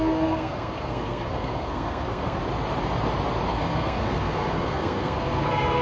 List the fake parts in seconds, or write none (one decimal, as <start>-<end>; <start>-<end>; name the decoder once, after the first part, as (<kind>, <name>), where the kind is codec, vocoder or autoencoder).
0.0-2.4 (codec, SNAC); 3.5-5.8